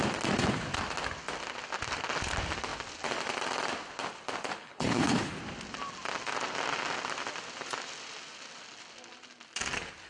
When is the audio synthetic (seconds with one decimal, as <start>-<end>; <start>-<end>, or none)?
4.6-5.4

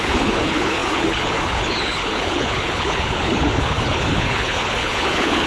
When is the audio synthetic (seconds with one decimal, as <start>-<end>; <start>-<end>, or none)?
0.0-5.5

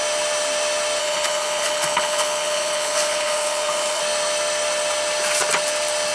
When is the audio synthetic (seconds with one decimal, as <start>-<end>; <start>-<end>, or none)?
1.0-4.0